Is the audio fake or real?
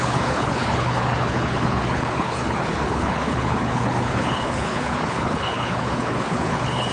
fake